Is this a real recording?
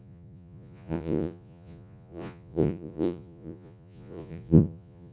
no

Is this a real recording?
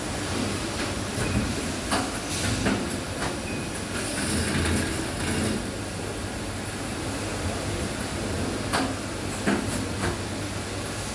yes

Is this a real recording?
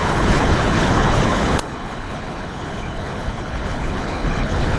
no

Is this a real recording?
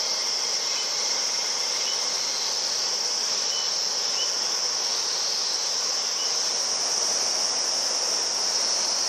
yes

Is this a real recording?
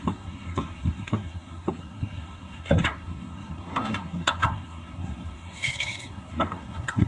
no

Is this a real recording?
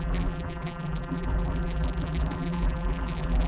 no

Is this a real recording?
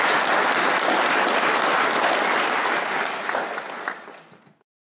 yes